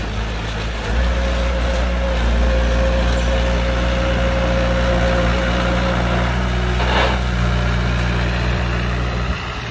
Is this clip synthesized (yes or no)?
no